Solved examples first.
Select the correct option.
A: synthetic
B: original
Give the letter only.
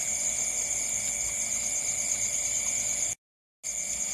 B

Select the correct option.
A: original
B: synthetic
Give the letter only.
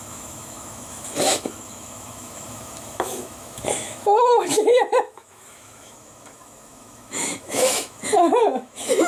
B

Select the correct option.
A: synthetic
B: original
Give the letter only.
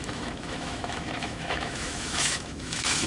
A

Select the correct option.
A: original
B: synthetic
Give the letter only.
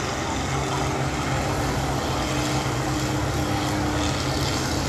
A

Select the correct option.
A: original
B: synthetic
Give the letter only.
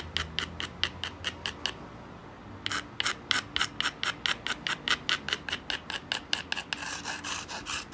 A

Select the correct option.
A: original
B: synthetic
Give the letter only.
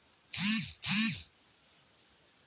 A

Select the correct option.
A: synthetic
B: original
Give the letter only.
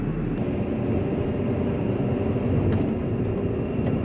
B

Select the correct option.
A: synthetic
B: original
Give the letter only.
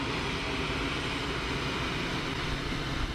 B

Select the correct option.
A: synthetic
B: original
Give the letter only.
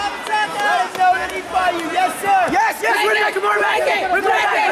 B